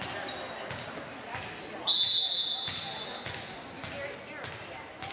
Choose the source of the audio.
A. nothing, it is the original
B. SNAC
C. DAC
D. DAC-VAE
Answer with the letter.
A